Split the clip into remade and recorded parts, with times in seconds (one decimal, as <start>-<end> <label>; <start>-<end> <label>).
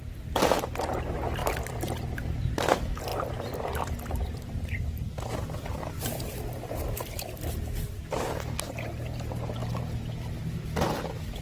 0.0-1.4 recorded; 1.4-2.7 remade; 2.7-3.1 recorded; 3.1-8.0 remade; 8.0-11.4 recorded